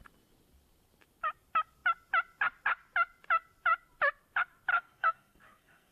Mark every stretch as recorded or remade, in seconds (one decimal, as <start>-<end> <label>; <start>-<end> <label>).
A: 0.0-4.7 recorded; 4.7-5.9 remade